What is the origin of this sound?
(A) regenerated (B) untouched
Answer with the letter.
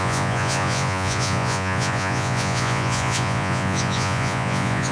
A